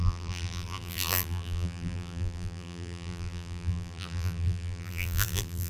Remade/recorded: remade